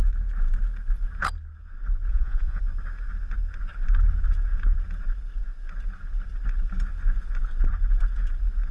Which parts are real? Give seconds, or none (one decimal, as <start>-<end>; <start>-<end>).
0.0-2.1; 2.6-8.7